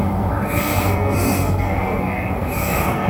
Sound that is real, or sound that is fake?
fake